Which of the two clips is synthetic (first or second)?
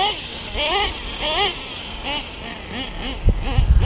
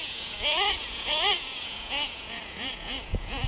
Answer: second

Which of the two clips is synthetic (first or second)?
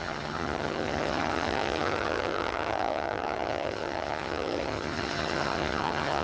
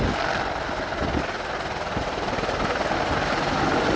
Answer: first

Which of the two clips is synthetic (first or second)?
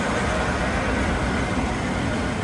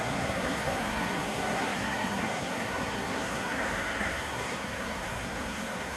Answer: second